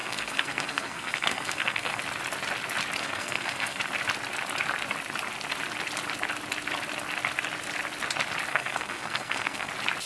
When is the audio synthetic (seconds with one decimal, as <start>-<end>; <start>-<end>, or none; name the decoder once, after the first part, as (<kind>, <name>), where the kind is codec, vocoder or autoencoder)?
0.0-2.0 (codec, SNAC); 3.0-3.8; 8.5-9.7